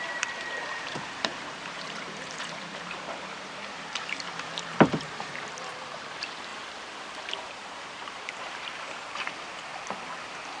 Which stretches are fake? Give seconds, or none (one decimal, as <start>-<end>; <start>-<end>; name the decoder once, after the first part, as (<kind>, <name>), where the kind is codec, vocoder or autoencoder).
0.0-6.5 (vocoder, BigVGAN v2); 7.2-9.7